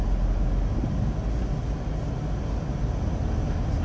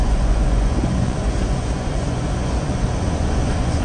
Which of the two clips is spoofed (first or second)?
second